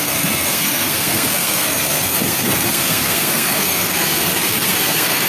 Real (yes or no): no